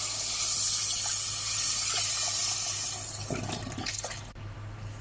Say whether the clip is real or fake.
real